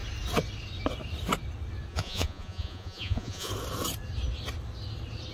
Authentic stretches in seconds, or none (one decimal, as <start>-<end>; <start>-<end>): 0.0-1.9; 3.5-5.3